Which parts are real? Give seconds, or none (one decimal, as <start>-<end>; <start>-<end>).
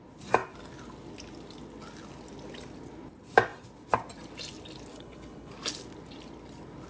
0.0-4.9; 5.5-6.9